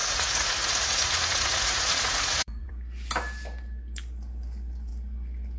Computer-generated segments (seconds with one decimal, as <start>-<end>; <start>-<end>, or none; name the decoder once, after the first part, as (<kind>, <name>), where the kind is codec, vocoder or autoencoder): 0.0-2.7 (vocoder, Vocos)